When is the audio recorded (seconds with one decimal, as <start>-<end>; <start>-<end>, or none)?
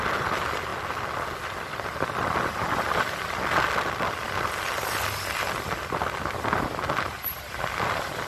0.0-8.3